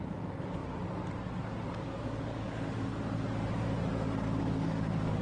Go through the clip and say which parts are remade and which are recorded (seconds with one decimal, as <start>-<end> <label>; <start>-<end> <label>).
0.0-0.6 remade; 0.6-1.8 recorded; 1.8-2.9 remade; 2.9-4.4 recorded; 4.4-5.2 remade